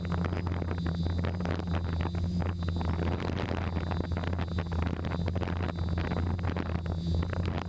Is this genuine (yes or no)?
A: yes